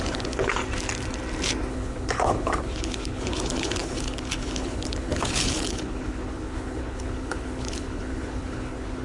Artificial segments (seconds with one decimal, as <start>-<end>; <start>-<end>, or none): 0.0-0.6; 1.7-9.0